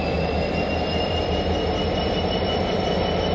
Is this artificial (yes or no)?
yes